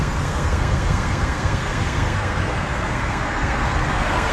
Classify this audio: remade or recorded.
remade